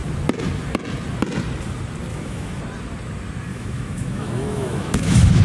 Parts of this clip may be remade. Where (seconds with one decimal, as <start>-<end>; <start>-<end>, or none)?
2.1-2.6; 3.5-5.4